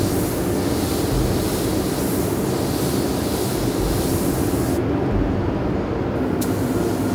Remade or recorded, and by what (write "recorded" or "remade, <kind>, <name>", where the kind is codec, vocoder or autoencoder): recorded